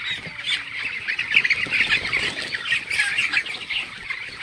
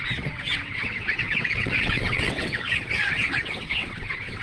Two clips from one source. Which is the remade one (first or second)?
second